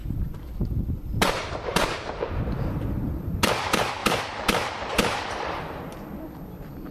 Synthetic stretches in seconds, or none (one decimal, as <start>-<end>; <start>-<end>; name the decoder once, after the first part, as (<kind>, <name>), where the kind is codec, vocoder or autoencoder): 0.0-2.3 (vocoder, BigVGAN v2); 4.0-5.8